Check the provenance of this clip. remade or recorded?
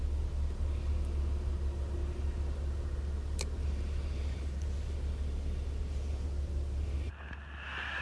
recorded